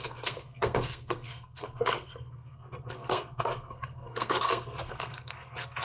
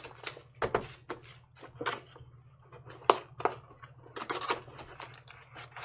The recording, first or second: second